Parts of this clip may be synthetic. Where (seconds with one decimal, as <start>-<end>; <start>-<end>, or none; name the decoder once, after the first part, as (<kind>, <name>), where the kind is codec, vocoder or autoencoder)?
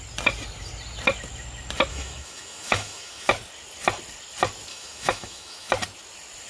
1.9-3.3 (autoencoder, DAC-VAE); 4.7-5.7